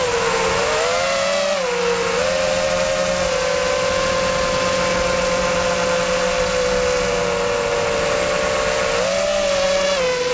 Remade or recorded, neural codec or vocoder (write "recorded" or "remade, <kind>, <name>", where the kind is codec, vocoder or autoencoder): recorded